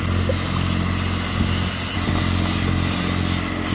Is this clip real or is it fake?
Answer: real